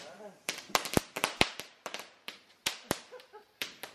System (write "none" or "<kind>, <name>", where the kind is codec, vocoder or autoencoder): vocoder, BigVGAN v2